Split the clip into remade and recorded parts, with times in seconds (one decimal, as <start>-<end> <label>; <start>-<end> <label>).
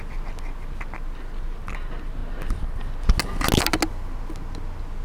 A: 0.0-5.0 recorded